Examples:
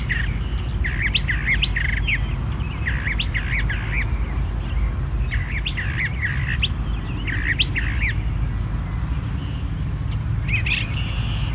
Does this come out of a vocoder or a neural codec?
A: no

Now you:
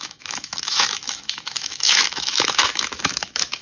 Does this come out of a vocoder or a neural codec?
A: yes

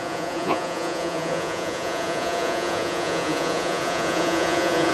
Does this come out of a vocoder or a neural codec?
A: yes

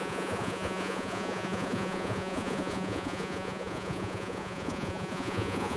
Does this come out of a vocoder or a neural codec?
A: yes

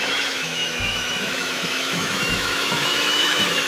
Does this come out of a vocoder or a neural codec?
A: yes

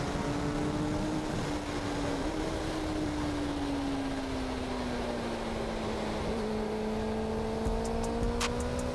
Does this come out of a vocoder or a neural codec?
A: no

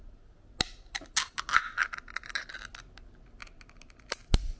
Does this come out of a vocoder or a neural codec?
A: no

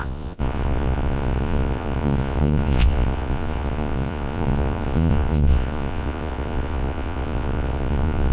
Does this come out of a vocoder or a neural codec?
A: yes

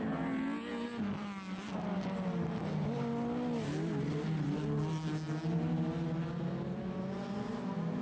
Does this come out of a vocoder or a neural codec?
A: no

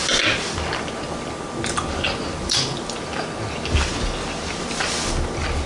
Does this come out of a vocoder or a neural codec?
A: no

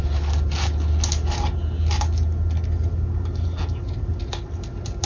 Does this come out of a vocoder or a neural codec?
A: no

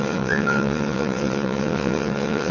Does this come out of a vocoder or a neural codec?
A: yes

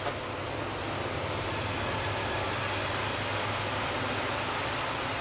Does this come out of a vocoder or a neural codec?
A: no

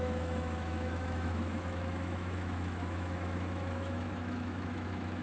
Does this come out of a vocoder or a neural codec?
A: yes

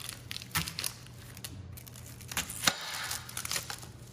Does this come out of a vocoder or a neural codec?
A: no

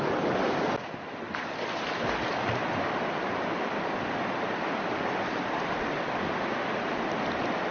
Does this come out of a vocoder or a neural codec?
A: no